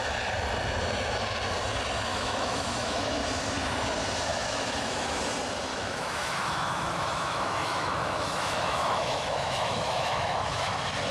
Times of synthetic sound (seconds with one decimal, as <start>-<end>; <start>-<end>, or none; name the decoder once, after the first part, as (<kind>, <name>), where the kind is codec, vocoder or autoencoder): 2.1-3.2 (autoencoder, DAC-VAE); 4.3-5.2; 5.7-10.7

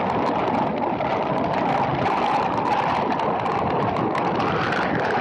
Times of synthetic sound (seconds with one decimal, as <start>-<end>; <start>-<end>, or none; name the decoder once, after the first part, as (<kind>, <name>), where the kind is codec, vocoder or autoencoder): none

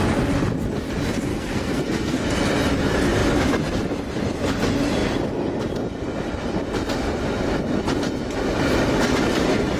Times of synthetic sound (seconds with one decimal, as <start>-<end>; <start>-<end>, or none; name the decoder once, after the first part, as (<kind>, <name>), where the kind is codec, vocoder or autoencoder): 1.3-2.2 (codec, SNAC)

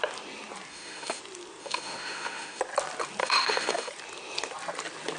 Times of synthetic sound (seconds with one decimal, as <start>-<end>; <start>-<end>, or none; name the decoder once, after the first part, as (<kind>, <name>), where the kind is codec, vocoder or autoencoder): 0.7-1.2 (autoencoder, DAC-VAE); 1.6-2.6; 3.2-3.9

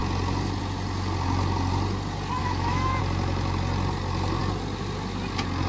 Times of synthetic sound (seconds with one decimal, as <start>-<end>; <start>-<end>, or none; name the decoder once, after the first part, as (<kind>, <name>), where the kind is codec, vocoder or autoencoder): 2.4-3.0 (autoencoder, DAC-VAE)

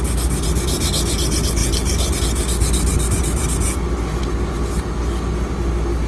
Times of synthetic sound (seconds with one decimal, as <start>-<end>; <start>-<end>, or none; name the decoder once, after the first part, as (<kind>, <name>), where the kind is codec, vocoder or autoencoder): 1.6-2.2 (vocoder, BigVGAN v2)

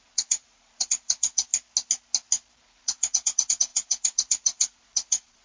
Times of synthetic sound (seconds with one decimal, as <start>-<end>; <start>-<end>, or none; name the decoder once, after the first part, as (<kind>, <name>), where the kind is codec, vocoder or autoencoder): 0.0-1.5 (vocoder, Vocos); 2.6-5.4